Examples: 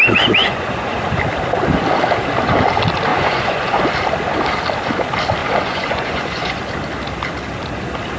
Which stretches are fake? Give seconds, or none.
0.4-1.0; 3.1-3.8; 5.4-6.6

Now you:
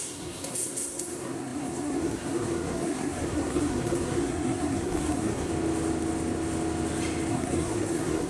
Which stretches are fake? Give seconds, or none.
0.0-5.5; 7.3-8.3

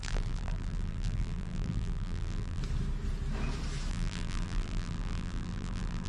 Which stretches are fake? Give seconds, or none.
0.0-2.6; 3.9-6.1

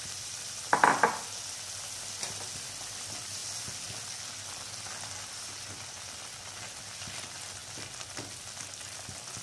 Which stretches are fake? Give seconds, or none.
none

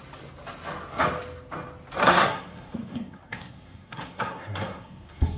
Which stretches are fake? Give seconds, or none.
2.0-5.4

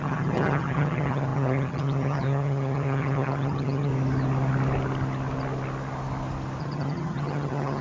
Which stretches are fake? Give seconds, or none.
0.0-3.9; 6.6-7.8